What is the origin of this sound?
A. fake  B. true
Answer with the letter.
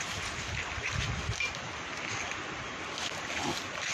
B